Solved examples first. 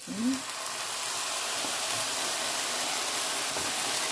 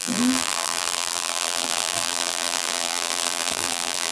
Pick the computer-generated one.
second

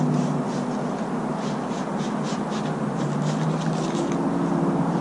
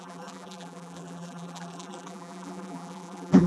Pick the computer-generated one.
second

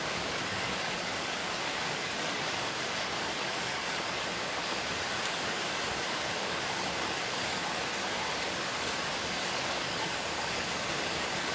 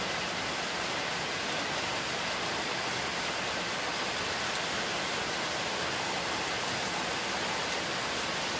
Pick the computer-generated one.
first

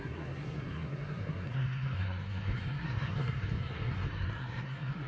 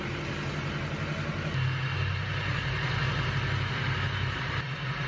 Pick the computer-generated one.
first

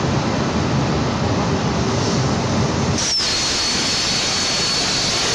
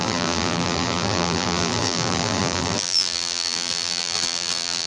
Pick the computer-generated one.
second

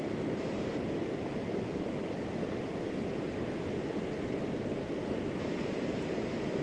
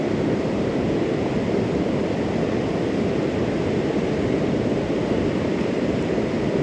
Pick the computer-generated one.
second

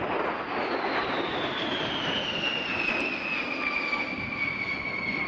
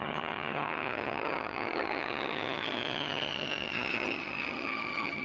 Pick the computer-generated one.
second